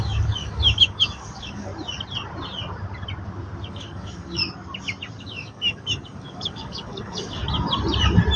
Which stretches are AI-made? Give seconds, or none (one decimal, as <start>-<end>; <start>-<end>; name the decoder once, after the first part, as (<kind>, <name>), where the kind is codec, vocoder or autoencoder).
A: 0.0-1.7 (codec, DAC); 3.7-4.4; 5.2-7.4